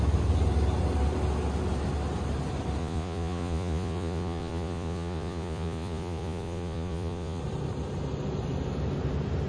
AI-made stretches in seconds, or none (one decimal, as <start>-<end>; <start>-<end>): 2.8-7.4